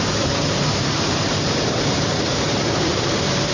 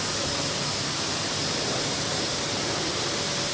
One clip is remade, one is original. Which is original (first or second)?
second